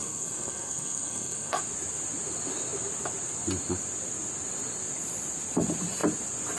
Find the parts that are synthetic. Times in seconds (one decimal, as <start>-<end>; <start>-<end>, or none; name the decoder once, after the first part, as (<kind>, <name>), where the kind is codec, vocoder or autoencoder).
0.0-1.6 (codec, SNAC)